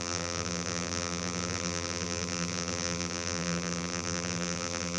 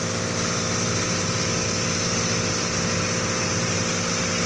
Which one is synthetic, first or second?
first